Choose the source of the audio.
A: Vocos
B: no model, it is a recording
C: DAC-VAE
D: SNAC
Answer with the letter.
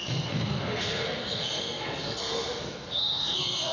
D